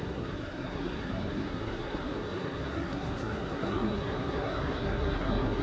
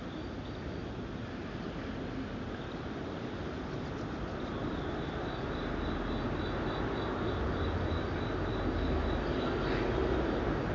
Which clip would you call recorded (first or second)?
second